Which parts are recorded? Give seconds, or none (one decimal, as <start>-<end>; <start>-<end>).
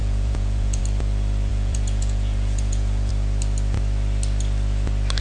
0.8-1.5; 3.1-5.2